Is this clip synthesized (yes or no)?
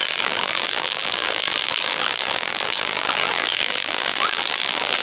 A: yes